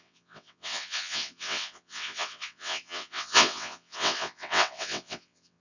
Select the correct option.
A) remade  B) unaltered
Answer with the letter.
A